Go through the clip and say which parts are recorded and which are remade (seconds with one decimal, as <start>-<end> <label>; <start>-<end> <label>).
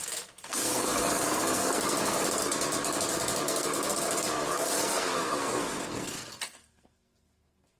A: 0.0-7.8 remade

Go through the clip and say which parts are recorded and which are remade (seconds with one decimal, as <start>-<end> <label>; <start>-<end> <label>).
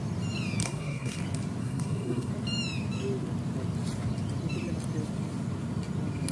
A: 0.0-0.6 recorded; 0.6-1.2 remade; 1.2-1.6 recorded; 1.6-2.3 remade; 2.3-6.3 recorded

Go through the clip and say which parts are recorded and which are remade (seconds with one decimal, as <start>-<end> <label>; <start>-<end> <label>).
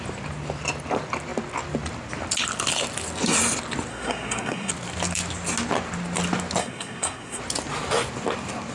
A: 0.0-3.9 recorded; 3.9-4.7 remade; 4.7-6.6 recorded; 6.6-7.4 remade; 7.4-8.7 recorded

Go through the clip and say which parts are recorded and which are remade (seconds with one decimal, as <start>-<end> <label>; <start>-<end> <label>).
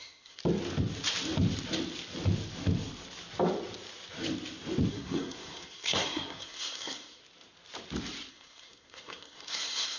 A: 0.0-0.4 remade; 0.4-4.9 recorded; 4.9-7.2 remade; 7.2-8.3 recorded; 8.3-10.0 remade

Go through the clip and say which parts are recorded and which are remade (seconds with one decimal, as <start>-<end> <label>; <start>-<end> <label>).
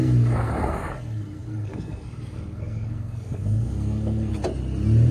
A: 0.0-4.3 remade; 4.3-5.1 recorded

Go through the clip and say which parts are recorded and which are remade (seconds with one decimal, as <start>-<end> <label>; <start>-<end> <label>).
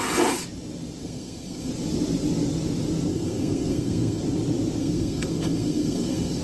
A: 0.0-1.0 recorded; 1.0-1.7 remade; 1.7-3.1 recorded; 3.1-4.2 remade; 4.2-4.8 recorded; 4.8-6.4 remade